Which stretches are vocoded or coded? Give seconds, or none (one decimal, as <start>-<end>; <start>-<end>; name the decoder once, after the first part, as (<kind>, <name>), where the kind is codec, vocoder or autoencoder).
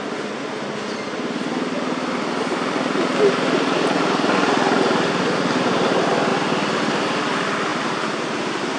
none